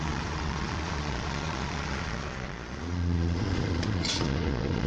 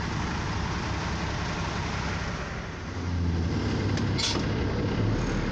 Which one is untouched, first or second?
second